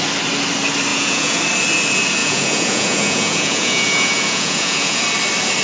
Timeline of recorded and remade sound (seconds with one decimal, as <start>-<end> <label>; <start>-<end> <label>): 0.0-0.9 recorded; 0.9-1.4 remade; 1.4-2.2 recorded; 2.2-5.0 remade; 5.0-5.6 recorded